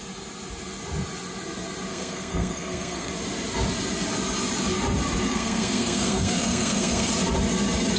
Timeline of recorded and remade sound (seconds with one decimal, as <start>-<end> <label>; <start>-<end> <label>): 0.0-1.9 recorded; 1.9-3.1 remade; 3.1-5.3 recorded; 5.3-7.1 remade; 7.1-8.0 recorded